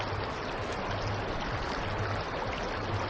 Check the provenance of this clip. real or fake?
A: real